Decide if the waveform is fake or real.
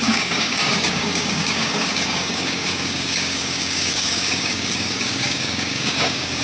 fake